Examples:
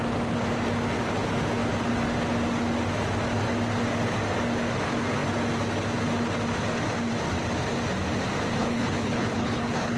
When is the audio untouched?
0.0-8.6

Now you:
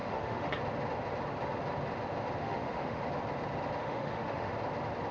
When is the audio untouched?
0.5-2.4; 3.0-3.8; 4.5-5.1